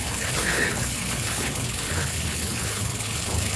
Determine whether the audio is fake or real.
fake